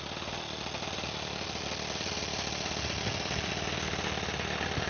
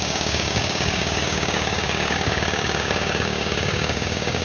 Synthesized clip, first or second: second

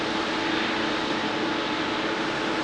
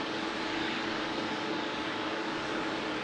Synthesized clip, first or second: second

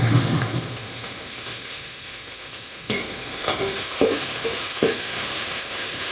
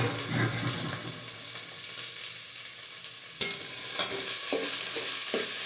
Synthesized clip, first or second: first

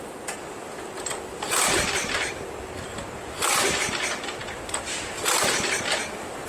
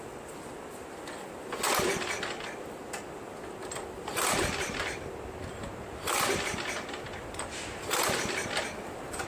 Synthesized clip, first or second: first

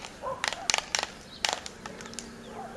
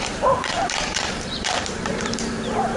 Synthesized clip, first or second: second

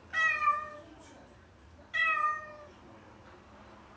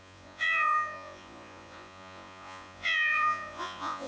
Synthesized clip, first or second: second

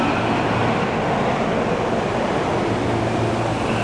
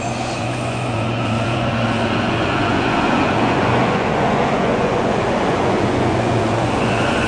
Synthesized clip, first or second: second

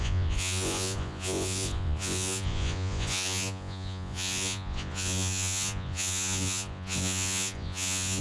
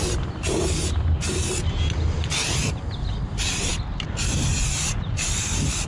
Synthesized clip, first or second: first